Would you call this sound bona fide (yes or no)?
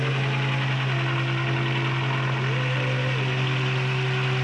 yes